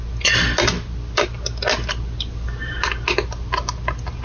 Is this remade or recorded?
recorded